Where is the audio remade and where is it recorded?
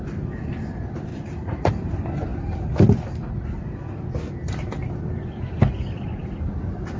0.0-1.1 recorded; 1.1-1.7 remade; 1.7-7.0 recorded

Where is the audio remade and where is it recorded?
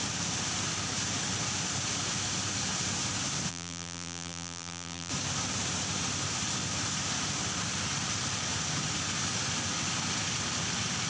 0.0-3.5 recorded; 3.5-5.1 remade; 5.1-11.1 recorded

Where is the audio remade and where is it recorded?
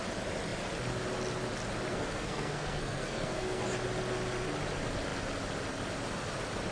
0.0-1.9 recorded; 1.9-3.6 remade; 3.6-6.7 recorded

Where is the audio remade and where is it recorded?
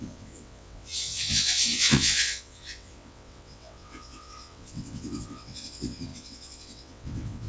0.0-7.5 remade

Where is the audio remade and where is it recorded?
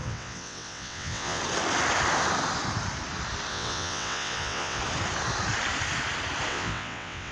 0.0-1.4 remade; 1.4-3.5 recorded; 3.5-4.8 remade; 4.8-6.5 recorded; 6.5-7.3 remade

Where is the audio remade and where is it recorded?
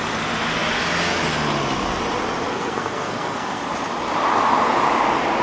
0.0-2.5 recorded; 2.5-3.6 remade; 3.6-5.4 recorded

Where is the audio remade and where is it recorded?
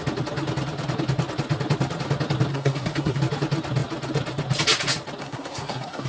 0.0-2.5 recorded; 2.5-3.2 remade; 3.2-5.2 recorded; 5.2-6.1 remade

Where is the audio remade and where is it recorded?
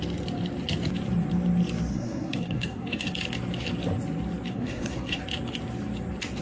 0.0-1.9 recorded; 1.9-3.1 remade; 3.1-4.5 recorded; 4.5-5.2 remade; 5.2-6.4 recorded